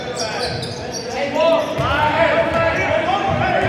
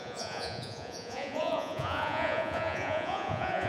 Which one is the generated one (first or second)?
second